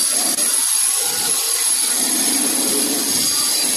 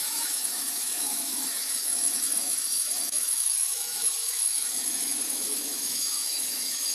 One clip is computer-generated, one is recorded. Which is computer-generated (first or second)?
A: second